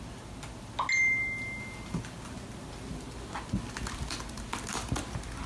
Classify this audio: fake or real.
real